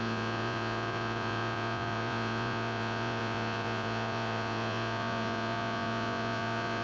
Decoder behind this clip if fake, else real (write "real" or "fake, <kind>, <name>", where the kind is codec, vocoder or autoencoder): fake, vocoder, Vocos